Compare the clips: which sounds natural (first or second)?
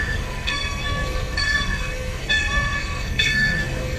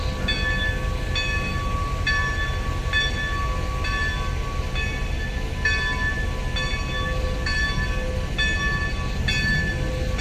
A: second